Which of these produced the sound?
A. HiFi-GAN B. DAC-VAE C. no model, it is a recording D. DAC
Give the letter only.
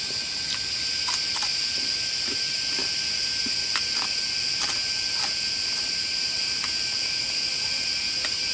C